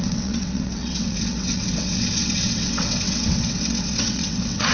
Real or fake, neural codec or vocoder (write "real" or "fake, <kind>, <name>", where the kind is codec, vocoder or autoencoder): fake, vocoder, WaveNeXt